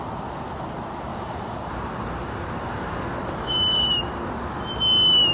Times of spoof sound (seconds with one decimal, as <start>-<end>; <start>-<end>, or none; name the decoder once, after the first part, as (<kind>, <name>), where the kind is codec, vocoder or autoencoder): 1.1-4.3 (vocoder, BigVGAN v2)